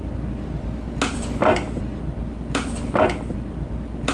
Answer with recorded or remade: recorded